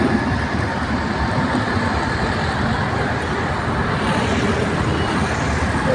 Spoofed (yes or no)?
yes